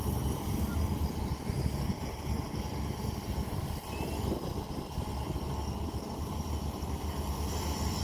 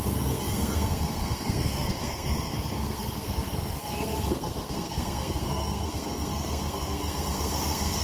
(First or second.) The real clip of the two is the first